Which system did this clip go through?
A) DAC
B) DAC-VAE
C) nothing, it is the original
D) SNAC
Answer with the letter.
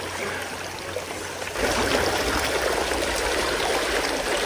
C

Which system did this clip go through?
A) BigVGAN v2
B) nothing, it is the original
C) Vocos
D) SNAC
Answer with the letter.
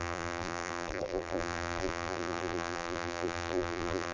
A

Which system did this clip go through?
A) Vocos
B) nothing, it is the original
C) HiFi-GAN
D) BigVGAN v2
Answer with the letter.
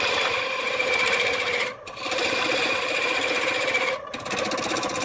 D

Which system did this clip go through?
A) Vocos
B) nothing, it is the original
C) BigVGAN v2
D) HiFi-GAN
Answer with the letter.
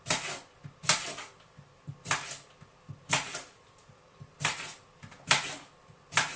B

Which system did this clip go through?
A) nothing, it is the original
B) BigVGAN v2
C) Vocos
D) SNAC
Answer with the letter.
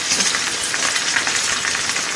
A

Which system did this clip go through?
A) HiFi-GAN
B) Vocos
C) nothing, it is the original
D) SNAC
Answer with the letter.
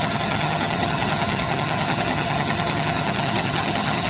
A